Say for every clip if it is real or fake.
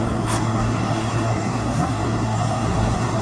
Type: fake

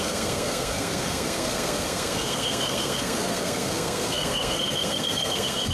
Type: fake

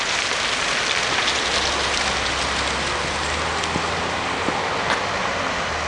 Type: real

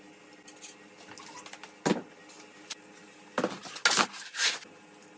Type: real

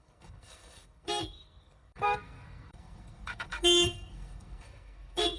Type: fake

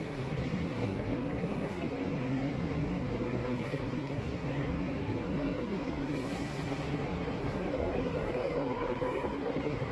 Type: fake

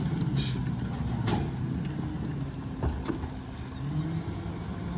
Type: real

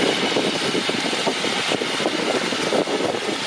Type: real